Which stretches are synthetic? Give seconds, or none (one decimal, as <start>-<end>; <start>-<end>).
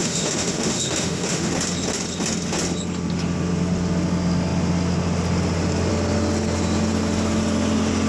0.0-1.5